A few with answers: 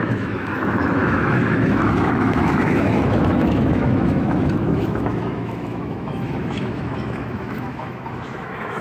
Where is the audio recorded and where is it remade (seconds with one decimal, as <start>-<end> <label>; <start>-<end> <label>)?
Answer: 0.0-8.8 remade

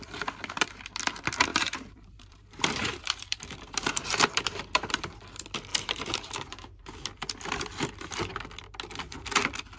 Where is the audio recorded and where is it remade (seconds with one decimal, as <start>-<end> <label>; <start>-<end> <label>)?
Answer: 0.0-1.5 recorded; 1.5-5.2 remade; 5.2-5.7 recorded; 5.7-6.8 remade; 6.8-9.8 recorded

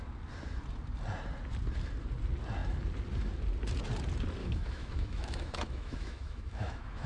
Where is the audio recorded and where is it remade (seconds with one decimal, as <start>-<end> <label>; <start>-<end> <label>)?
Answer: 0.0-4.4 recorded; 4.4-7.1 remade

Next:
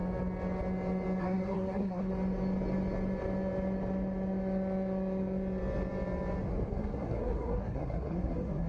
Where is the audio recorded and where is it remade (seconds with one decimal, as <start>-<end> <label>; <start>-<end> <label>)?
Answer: 0.0-1.2 recorded; 1.2-2.1 remade; 2.1-6.7 recorded; 6.7-8.7 remade